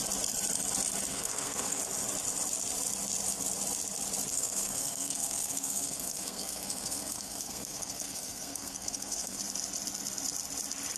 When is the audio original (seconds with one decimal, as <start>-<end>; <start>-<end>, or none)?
0.0-1.1; 1.8-4.3; 9.4-11.0